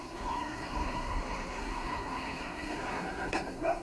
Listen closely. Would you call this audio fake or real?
fake